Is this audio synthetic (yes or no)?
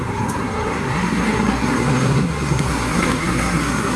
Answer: yes